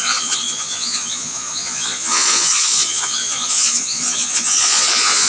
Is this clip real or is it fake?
fake